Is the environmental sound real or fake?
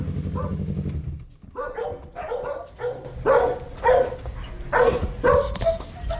real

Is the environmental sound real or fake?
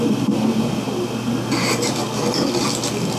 real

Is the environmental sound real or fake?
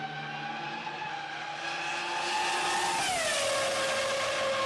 real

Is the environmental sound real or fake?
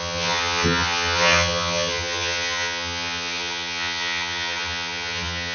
fake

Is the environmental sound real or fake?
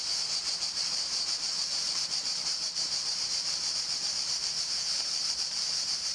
fake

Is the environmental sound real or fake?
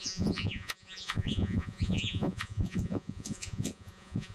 fake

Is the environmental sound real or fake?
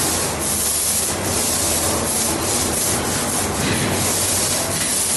real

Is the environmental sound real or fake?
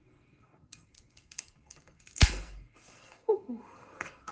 fake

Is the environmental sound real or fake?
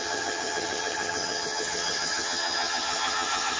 fake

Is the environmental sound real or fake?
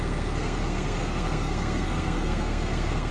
fake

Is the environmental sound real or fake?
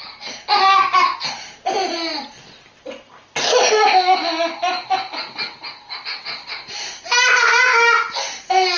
real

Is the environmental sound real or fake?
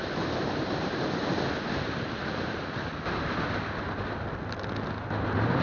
real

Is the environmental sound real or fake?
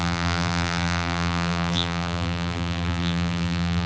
fake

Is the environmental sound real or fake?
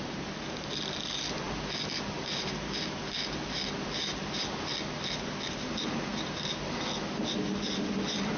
real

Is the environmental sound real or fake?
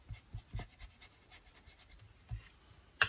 real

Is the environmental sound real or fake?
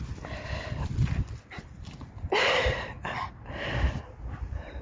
real